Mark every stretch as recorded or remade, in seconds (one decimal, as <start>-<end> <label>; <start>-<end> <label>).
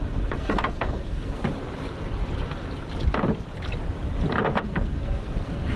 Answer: 0.0-1.4 remade; 1.4-4.6 recorded; 4.6-5.8 remade